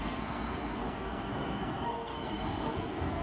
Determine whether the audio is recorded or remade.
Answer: remade